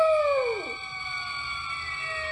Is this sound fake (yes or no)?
no